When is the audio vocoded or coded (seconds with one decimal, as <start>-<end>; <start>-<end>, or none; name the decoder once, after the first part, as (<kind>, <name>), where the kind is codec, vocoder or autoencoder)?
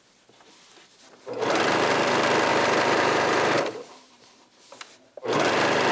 2.5-5.2 (vocoder, BigVGAN v2)